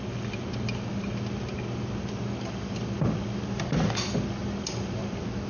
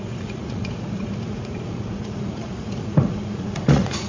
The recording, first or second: first